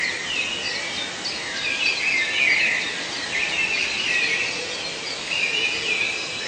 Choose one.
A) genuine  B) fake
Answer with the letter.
A